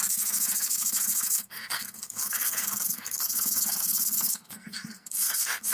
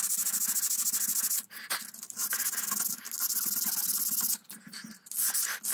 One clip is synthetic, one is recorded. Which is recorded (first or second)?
second